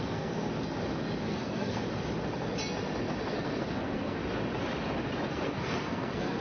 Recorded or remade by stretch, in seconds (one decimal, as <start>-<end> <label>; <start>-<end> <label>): 0.0-0.5 remade; 0.5-1.2 recorded; 1.2-1.8 remade; 1.8-3.3 recorded; 3.3-4.2 remade; 4.2-5.3 recorded; 5.3-6.4 remade